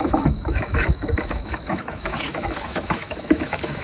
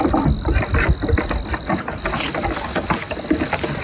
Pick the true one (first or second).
second